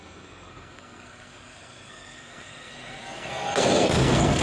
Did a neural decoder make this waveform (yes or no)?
yes